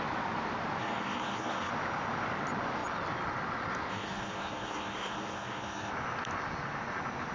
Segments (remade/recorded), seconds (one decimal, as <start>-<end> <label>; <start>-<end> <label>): 0.0-0.8 recorded; 0.8-1.7 remade; 1.7-3.9 recorded; 3.9-5.9 remade; 5.9-7.3 recorded